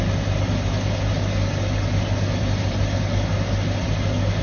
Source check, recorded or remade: recorded